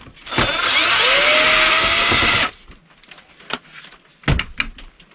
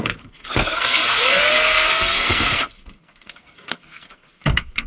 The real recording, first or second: first